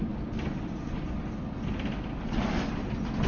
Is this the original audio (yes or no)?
yes